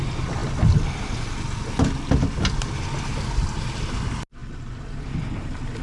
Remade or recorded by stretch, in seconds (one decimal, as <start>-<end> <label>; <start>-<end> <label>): 0.0-5.8 recorded